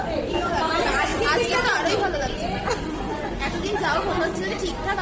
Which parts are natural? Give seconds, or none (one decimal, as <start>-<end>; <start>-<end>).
0.0-5.0

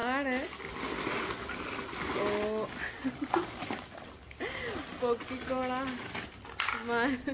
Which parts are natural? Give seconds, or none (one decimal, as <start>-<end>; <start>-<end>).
0.0-7.3

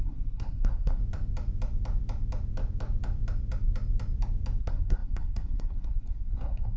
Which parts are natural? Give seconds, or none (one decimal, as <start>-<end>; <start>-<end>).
1.0-4.6

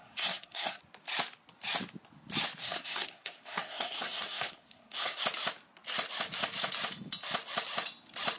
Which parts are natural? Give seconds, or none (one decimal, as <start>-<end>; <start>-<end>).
0.8-2.6; 5.2-8.4

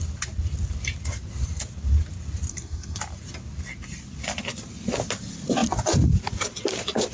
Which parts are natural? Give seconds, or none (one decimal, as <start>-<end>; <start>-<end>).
0.0-2.5; 3.0-7.1

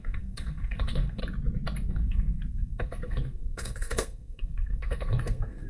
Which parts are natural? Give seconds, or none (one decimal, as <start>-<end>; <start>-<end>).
1.2-1.9

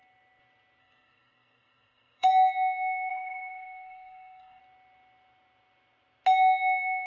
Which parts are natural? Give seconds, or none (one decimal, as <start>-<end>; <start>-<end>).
0.0-0.8; 2.3-3.1; 4.6-7.1

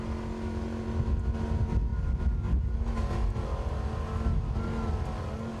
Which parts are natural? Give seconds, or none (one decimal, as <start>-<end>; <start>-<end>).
0.0-5.6